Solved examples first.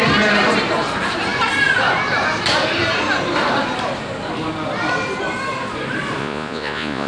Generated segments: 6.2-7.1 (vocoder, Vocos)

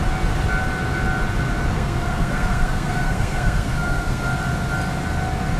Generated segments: 1.7-4.2 (codec, SNAC)

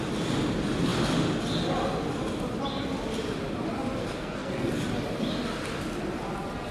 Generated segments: 4.0-4.7 (codec, SNAC)

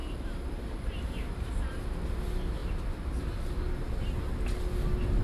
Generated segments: none

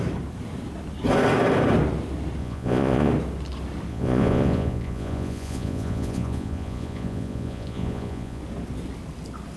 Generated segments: 2.4-3.1 (vocoder, Vocos); 3.9-8.4

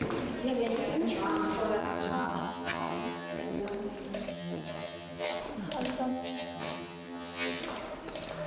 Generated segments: 1.8-3.6 (vocoder, HiFi-GAN); 4.3-5.4; 6.1-7.6

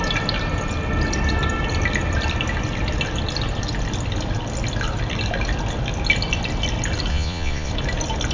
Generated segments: 7.1-7.7 (vocoder, Vocos)